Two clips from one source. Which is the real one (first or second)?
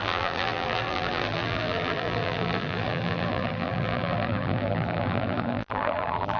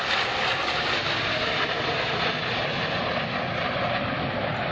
second